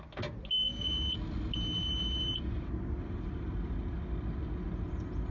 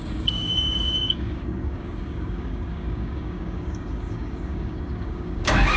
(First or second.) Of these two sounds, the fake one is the second